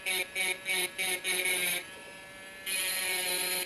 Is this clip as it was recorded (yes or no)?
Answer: yes